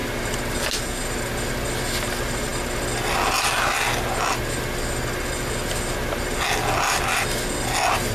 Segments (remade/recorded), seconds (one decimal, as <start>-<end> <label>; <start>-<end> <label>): 0.0-8.1 recorded